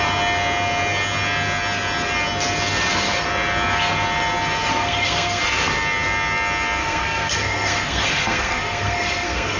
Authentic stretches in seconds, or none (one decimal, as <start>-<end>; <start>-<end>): 0.0-4.7; 5.4-6.8

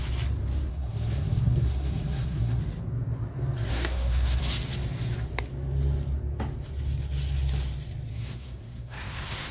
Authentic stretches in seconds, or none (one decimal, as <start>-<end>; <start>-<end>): 0.0-0.7; 2.6-3.7; 4.4-8.1

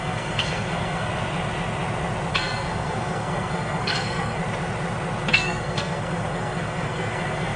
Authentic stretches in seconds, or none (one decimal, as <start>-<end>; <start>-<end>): 1.1-2.3; 4.4-5.3

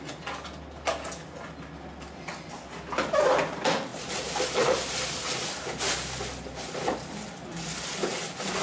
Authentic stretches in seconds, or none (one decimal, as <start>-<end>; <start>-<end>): 0.0-8.6

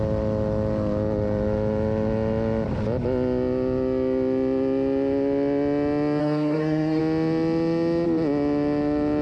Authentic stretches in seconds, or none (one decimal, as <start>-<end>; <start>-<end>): 0.0-6.2; 7.0-9.2

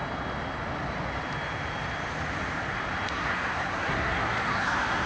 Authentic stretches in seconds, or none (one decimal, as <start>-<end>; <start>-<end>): 0.0-3.1

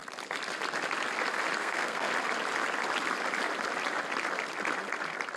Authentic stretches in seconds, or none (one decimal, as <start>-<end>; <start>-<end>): 0.0-1.6; 2.1-5.4

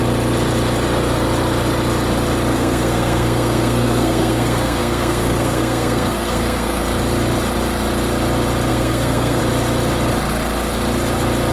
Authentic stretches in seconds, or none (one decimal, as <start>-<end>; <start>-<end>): 0.0-2.5; 6.8-8.7; 9.4-11.5